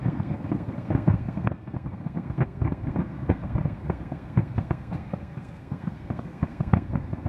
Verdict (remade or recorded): remade